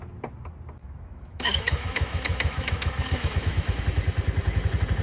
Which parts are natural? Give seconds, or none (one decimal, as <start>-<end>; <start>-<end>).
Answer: 0.0-0.8; 3.8-5.0